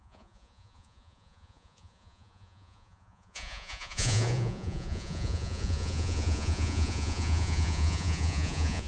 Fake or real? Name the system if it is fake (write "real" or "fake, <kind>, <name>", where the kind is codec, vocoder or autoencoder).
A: fake, vocoder, Vocos